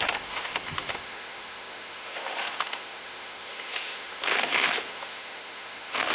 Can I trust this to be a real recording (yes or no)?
no